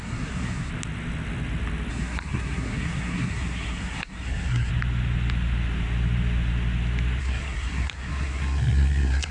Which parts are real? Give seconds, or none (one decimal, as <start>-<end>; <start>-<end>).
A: 0.7-1.9; 4.7-7.2

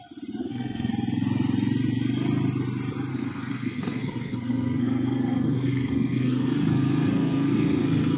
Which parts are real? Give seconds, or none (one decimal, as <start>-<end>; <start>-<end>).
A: 0.0-0.4; 0.9-3.1

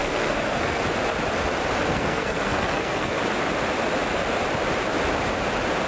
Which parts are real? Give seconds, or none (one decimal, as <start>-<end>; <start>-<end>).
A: 0.8-1.9; 3.2-5.9

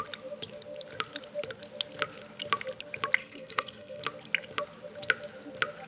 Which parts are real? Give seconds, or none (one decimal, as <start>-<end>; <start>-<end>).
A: 0.0-3.2; 4.0-5.9